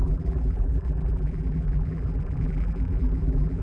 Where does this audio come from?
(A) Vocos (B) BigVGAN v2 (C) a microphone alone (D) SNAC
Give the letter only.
B